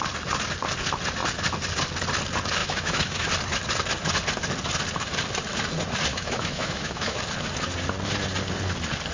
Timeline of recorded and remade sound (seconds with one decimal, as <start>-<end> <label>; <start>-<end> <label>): 0.0-2.6 recorded; 2.6-3.3 remade; 3.3-6.1 recorded; 6.1-7.2 remade; 7.2-9.1 recorded